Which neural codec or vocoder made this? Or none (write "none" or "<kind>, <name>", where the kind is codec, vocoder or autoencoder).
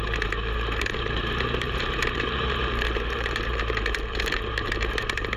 vocoder, BigVGAN v2